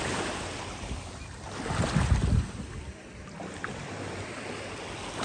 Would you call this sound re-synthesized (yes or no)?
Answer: no